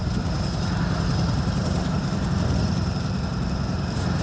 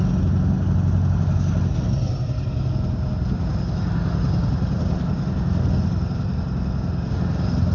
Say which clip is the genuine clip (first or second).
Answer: second